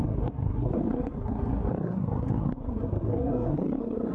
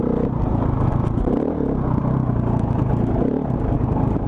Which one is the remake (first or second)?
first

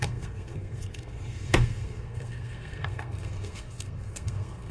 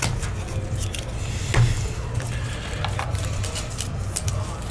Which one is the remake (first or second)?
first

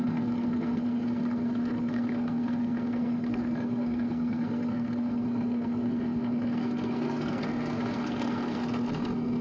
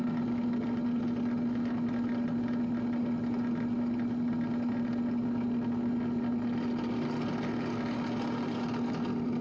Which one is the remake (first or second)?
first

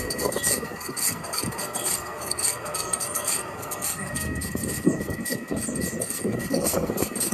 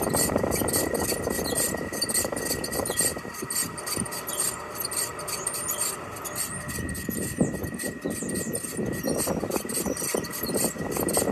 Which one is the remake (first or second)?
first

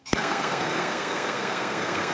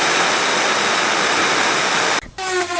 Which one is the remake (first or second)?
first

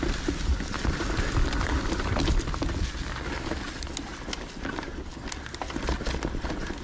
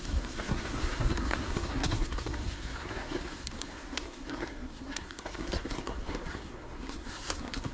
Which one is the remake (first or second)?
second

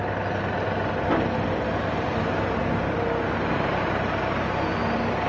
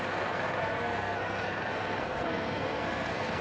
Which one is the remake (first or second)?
second